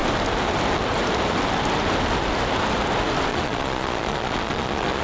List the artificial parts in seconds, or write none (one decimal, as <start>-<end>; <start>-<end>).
3.3-5.0